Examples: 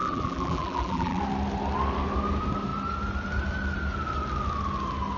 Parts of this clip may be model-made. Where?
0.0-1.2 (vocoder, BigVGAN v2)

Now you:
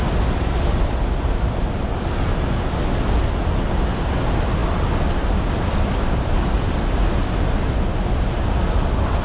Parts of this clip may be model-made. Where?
none

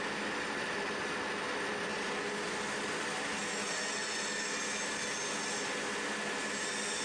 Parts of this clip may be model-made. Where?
none

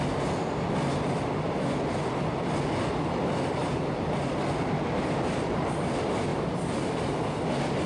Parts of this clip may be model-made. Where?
3.6-4.3 (vocoder, BigVGAN v2); 6.3-7.0